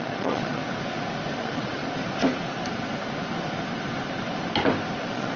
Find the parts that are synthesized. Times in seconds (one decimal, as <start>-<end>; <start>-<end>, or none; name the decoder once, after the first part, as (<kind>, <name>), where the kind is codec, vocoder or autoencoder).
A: 0.0-0.6 (vocoder, Vocos); 1.4-1.8; 5.0-5.4